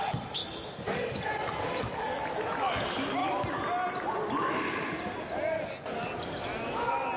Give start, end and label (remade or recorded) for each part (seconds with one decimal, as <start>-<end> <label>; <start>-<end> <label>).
0.0-7.2 recorded